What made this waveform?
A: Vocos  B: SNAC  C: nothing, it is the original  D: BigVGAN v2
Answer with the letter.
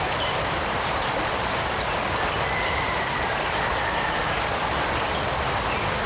C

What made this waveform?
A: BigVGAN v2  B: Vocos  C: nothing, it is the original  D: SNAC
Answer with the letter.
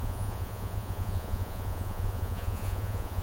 B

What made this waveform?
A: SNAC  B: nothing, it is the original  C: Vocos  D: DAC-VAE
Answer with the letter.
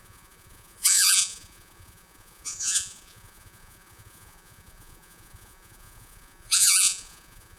C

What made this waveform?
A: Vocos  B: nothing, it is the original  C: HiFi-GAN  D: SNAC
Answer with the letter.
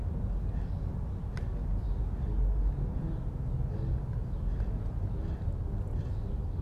B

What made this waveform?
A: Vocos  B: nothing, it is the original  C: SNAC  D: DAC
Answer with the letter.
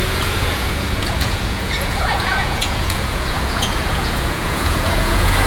A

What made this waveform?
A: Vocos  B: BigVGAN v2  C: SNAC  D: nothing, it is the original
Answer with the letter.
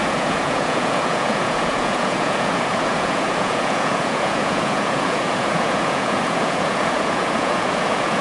A